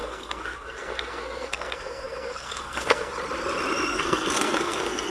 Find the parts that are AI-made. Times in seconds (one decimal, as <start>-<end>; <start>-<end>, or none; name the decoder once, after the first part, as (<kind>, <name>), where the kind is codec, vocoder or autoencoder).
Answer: 0.0-3.1 (codec, SNAC); 3.9-5.1